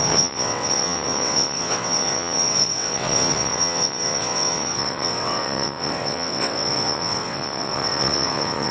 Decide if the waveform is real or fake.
fake